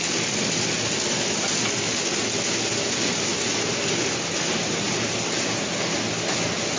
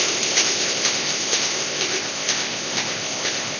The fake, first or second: second